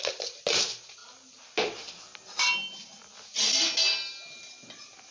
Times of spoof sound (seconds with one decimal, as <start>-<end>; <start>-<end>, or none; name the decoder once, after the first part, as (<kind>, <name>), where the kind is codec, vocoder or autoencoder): none